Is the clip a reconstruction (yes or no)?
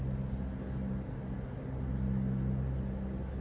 no